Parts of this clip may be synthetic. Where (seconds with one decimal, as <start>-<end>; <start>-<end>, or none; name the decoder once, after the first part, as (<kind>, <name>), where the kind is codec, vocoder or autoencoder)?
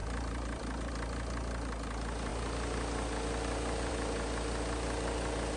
0.0-0.9 (vocoder, BigVGAN v2)